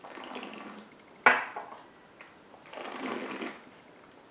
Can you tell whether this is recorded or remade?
recorded